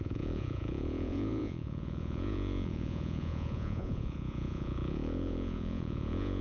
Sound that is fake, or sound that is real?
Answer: fake